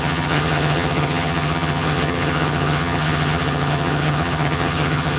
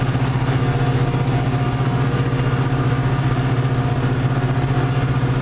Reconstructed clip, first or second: first